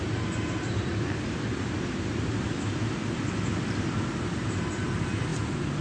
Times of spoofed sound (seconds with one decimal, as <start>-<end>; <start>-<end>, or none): none